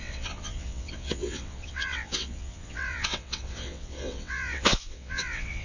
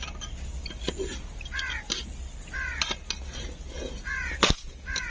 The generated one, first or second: first